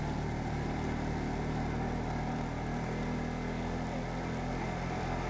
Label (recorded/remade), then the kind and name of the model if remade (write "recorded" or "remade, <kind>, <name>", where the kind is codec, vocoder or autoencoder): recorded